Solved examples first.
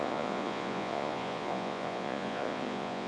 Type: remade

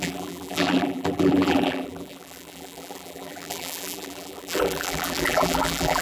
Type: remade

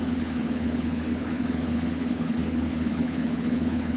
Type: remade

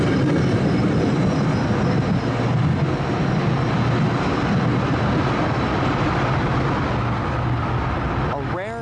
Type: recorded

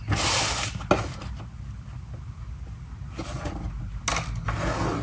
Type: recorded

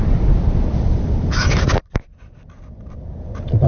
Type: remade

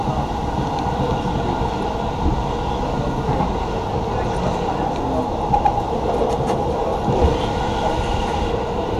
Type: recorded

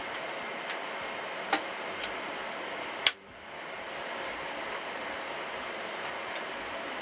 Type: remade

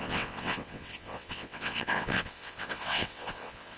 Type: remade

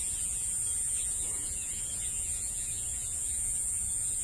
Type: remade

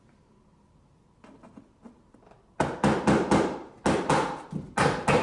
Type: recorded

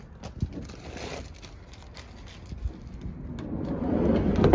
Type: recorded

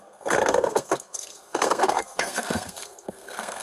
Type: remade